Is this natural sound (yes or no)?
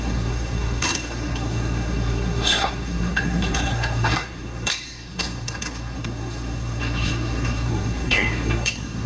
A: no